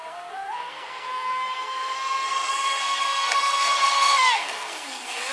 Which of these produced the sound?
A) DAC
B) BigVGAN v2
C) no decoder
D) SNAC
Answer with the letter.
D